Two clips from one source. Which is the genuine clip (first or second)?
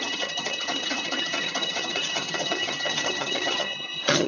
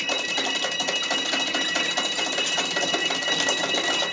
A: second